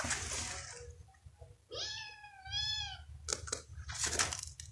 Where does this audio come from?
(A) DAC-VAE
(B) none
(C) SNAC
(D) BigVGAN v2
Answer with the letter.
B